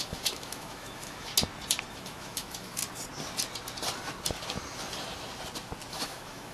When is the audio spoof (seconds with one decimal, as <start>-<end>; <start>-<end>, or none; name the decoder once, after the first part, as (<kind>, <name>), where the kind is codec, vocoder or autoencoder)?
0.0-1.3 (autoencoder, DAC-VAE); 1.9-2.8; 5.9-6.5